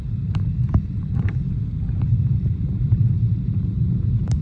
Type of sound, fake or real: fake